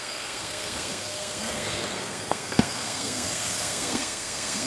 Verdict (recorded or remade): remade